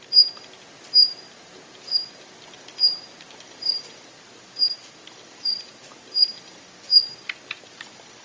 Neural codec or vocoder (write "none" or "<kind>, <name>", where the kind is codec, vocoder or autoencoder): vocoder, BigVGAN v2